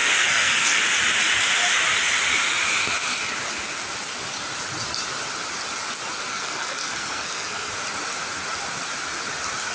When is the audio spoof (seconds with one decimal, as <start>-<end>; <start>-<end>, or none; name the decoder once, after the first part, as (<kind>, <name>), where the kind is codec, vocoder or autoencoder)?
0.0-0.8 (codec, SNAC); 6.3-7.7